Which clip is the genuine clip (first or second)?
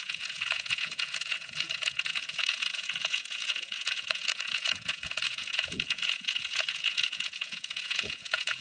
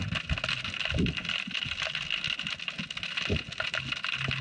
second